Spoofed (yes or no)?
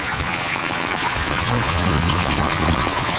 yes